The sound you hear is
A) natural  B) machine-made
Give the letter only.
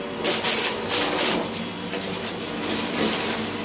A